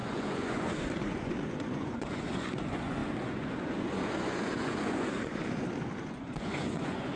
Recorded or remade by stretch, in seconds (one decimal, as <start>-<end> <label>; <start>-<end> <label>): 0.0-5.4 remade; 5.4-6.0 recorded; 6.0-7.2 remade

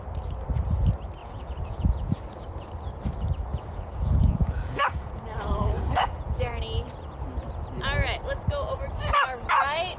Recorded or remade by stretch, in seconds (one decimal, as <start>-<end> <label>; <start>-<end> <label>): 0.0-1.2 recorded; 1.2-2.0 remade; 2.0-3.5 recorded; 3.5-6.6 remade; 6.6-10.0 recorded

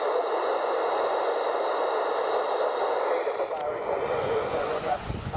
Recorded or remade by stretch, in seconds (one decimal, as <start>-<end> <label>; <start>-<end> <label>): 0.0-0.5 remade; 0.5-3.7 recorded; 3.7-5.4 remade

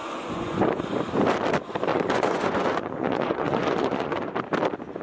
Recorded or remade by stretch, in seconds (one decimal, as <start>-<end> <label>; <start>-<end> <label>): 0.0-0.8 remade; 0.8-1.9 recorded; 1.9-4.3 remade; 4.3-5.0 recorded